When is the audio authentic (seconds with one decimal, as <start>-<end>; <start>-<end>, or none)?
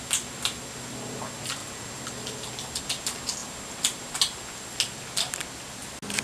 0.0-6.2